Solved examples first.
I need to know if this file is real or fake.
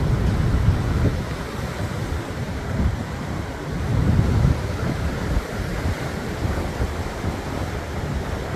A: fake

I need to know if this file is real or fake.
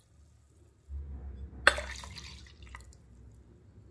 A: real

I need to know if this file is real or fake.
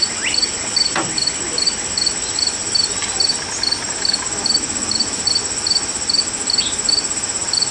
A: real